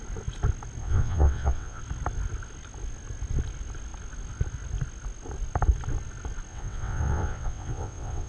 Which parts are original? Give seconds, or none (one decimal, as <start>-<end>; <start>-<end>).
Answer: 0.0-0.8; 1.8-6.5